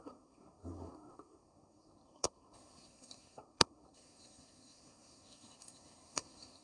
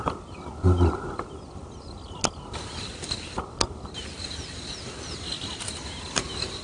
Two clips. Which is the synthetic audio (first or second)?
first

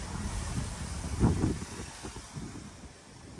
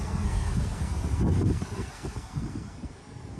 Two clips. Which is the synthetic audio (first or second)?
second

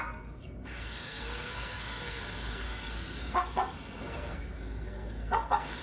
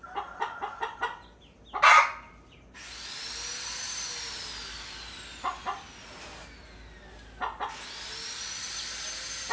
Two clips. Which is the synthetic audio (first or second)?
first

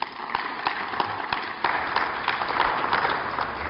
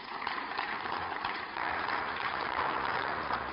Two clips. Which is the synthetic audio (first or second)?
second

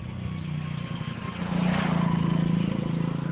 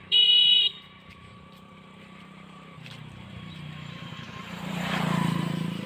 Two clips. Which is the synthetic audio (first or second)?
second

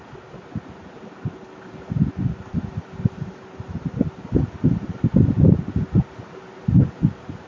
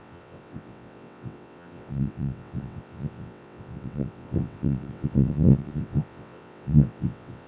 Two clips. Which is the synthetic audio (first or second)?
second